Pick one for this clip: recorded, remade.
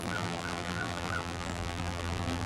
remade